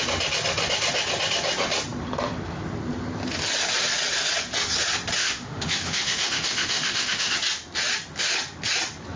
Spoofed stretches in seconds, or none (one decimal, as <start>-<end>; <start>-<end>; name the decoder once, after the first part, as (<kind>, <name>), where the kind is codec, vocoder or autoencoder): 5.2-7.3 (autoencoder, DAC-VAE)